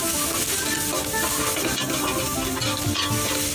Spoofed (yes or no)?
no